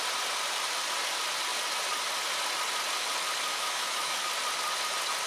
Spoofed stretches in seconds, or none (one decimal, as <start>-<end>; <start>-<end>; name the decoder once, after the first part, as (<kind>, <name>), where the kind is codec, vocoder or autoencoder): 3.5-4.3 (autoencoder, DAC-VAE)